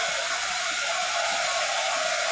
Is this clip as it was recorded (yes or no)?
yes